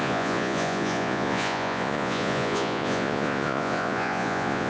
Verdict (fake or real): fake